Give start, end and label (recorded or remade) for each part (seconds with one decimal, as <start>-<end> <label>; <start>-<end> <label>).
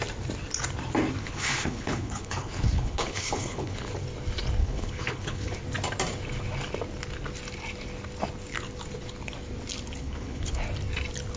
0.0-1.2 recorded; 1.2-3.9 remade; 3.9-4.6 recorded; 4.6-5.5 remade; 5.5-10.0 recorded; 10.0-10.6 remade; 10.6-11.4 recorded